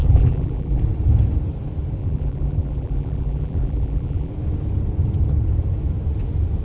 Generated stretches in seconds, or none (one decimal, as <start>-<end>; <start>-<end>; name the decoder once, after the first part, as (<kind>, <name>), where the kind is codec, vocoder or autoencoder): 0.0-0.8 (vocoder, BigVGAN v2); 2.0-4.3